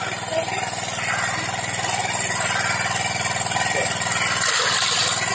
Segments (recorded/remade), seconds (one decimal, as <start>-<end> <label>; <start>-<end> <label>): 0.0-5.3 recorded